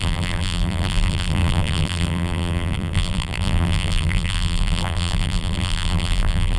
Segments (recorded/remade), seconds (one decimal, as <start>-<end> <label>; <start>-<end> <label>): 0.0-6.6 remade